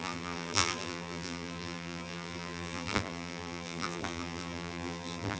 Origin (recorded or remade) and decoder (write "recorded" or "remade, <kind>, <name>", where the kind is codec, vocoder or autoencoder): remade, vocoder, BigVGAN v2